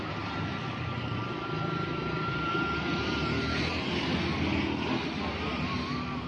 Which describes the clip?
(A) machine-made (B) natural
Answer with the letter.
B